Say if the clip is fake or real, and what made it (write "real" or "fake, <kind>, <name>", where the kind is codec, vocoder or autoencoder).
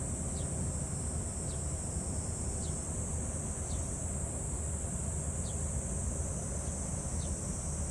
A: real